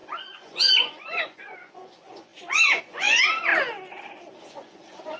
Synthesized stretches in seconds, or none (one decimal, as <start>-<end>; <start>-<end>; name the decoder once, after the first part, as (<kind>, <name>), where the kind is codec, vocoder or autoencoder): 0.0-3.5 (vocoder, Vocos); 4.4-5.2